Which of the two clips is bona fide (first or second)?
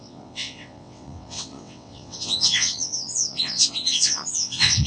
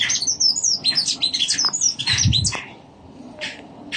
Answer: second